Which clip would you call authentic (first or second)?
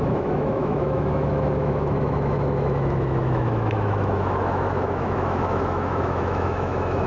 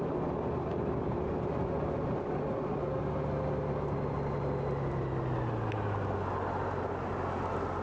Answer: second